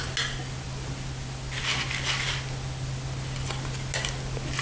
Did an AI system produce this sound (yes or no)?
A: no